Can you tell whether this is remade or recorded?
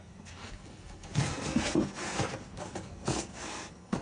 remade